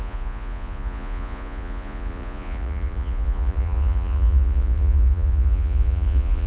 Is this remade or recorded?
remade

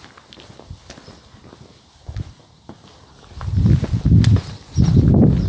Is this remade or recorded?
recorded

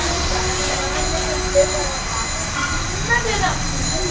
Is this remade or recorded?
recorded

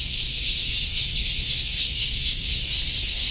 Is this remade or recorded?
remade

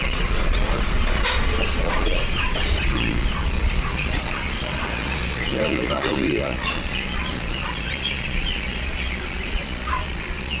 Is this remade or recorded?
remade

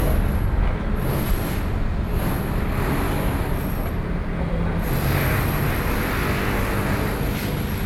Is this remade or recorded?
recorded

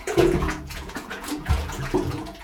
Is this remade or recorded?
remade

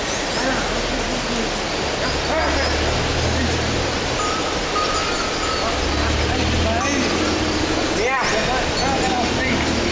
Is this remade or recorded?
recorded